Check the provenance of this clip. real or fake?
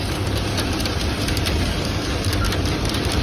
real